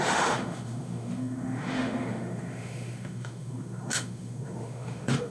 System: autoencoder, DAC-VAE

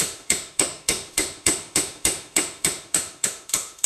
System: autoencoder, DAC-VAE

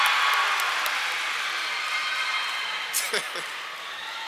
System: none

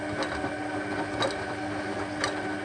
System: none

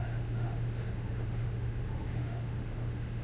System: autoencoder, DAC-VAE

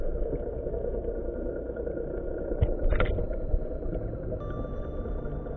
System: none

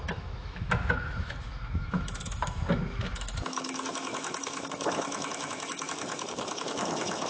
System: autoencoder, DAC-VAE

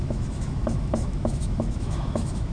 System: autoencoder, DAC-VAE